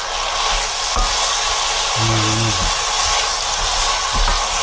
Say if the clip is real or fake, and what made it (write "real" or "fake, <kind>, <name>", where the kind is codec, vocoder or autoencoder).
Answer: real